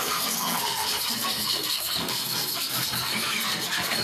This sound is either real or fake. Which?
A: fake